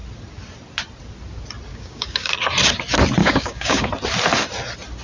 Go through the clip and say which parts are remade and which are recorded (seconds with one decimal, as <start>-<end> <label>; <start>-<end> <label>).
0.0-1.7 recorded; 1.7-2.3 remade; 2.3-3.2 recorded; 3.2-3.9 remade; 3.9-5.0 recorded